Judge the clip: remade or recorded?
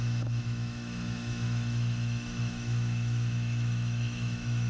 remade